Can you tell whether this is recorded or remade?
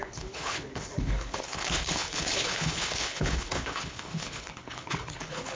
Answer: remade